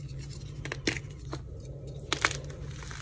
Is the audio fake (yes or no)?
no